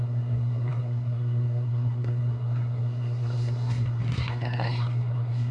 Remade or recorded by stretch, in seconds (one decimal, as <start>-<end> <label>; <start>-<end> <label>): 0.0-5.5 remade